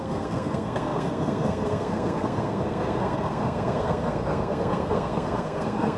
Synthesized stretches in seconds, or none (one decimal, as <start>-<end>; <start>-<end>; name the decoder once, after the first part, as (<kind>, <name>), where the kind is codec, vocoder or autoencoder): 0.0-6.0 (codec, SNAC)